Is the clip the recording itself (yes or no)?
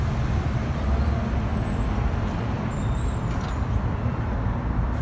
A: no